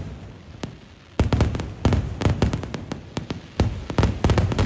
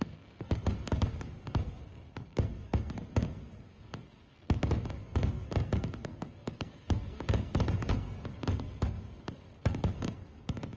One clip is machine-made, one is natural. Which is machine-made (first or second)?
second